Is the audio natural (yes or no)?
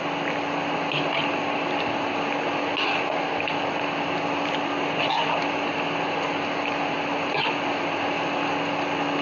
yes